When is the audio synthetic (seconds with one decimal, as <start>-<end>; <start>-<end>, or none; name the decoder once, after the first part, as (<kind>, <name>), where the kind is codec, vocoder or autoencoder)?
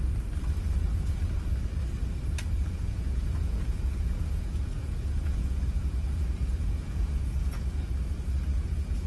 2.6-7.7 (vocoder, Vocos); 8.5-9.1